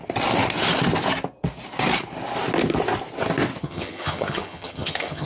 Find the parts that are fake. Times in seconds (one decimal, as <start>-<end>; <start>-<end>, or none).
3.6-5.3